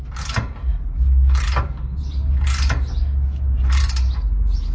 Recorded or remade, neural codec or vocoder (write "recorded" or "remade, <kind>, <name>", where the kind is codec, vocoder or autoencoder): recorded